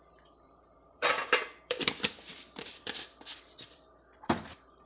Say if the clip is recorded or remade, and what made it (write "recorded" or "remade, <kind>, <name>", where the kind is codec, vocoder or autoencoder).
remade, vocoder, BigVGAN v2